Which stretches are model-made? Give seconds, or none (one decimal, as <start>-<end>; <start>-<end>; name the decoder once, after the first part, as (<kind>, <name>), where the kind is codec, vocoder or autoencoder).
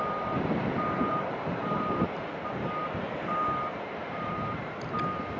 1.1-2.4 (vocoder, BigVGAN v2); 4.0-4.6